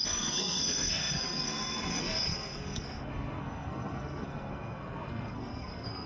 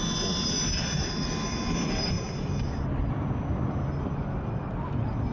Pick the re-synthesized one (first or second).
first